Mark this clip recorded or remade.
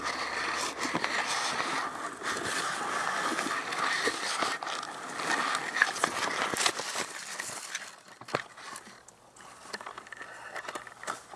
recorded